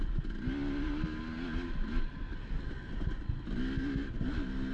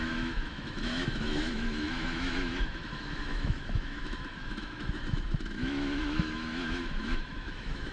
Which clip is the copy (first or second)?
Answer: second